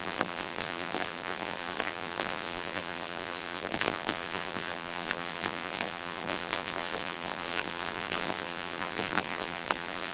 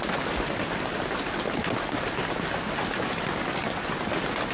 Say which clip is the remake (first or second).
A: first